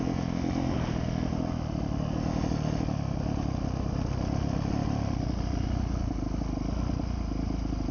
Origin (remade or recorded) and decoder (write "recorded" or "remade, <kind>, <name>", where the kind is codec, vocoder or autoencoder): recorded